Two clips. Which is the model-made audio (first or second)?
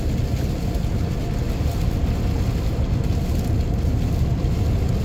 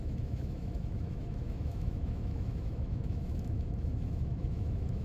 second